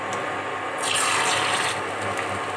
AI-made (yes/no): no